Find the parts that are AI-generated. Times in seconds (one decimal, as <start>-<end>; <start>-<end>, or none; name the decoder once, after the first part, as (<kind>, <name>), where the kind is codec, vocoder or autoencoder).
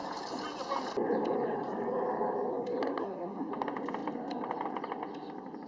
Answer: 2.5-3.5 (codec, SNAC)